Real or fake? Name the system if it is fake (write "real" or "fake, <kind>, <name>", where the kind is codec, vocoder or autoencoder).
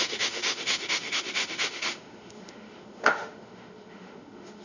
fake, autoencoder, DAC-VAE